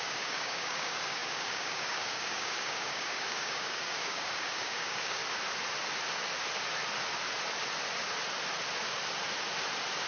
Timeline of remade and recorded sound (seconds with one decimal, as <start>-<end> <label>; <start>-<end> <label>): 0.0-5.2 remade; 5.2-10.1 recorded